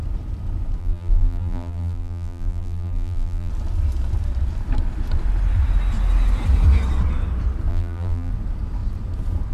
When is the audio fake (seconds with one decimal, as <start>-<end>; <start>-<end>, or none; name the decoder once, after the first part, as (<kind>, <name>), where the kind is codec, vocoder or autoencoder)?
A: 0.8-3.5 (vocoder, BigVGAN v2); 7.7-8.3